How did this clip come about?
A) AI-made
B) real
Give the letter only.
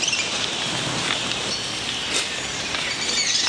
B